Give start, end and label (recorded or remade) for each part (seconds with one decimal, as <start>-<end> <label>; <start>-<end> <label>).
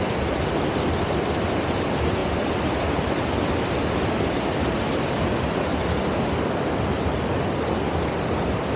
0.0-8.8 recorded